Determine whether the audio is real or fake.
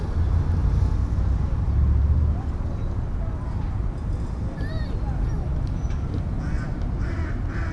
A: real